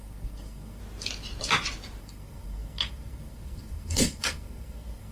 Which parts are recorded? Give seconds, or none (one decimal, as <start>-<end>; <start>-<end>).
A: 0.8-2.0